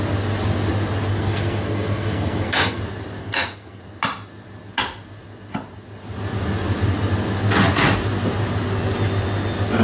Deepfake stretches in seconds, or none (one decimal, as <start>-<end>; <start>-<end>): 1.1-2.8; 3.2-3.8